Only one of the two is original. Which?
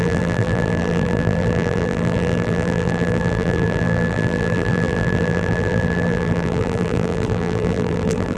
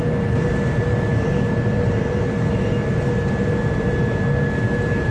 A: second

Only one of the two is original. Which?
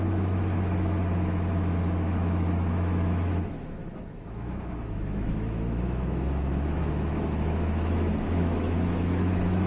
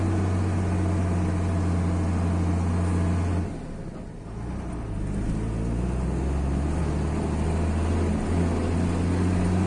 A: second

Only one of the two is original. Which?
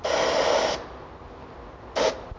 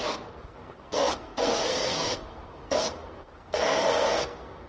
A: first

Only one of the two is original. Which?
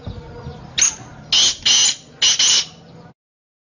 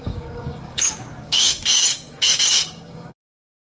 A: first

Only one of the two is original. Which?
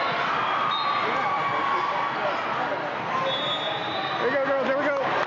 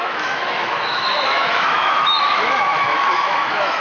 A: first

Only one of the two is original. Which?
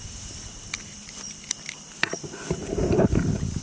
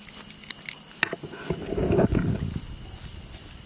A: second